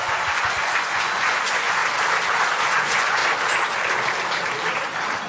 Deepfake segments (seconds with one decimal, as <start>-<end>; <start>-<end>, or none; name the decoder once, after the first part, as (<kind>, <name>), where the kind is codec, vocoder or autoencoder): 0.0-1.8 (vocoder, Vocos); 2.6-3.2